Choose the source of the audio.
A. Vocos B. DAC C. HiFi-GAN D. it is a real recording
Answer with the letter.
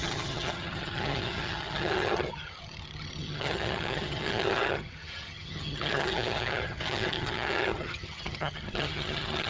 C